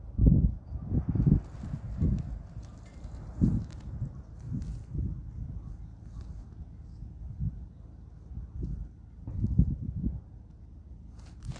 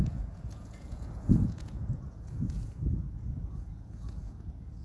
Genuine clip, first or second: first